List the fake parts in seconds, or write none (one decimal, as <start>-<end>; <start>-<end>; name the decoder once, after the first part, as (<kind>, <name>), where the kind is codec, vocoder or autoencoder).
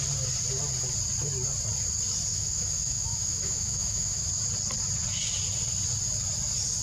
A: 2.3-4.3 (autoencoder, DAC-VAE)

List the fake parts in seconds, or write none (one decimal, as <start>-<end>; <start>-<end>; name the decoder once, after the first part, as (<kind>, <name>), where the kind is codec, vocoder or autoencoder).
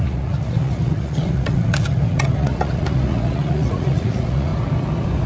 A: 0.0-4.5 (vocoder, Vocos)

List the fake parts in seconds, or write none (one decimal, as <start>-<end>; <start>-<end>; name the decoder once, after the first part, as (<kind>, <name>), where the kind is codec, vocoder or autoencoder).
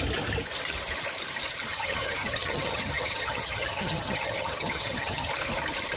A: 1.7-5.3 (vocoder, HiFi-GAN)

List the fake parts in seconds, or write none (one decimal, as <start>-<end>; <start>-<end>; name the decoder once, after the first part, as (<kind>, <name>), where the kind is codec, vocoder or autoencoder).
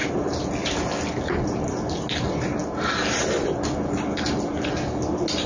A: none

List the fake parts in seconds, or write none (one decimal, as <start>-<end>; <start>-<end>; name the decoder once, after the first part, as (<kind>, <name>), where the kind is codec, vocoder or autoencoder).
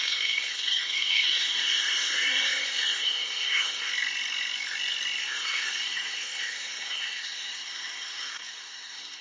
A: 0.0-3.9 (codec, SNAC); 5.2-9.2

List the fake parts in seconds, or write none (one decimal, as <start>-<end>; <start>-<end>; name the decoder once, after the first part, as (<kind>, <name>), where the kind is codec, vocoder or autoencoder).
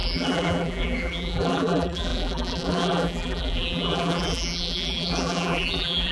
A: 0.0-6.1 (vocoder, BigVGAN v2)